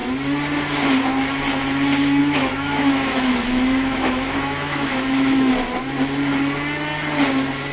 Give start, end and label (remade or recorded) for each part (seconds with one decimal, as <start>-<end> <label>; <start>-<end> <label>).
0.0-2.2 recorded; 2.2-5.5 remade; 5.5-7.7 recorded